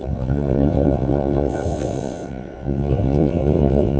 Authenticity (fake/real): fake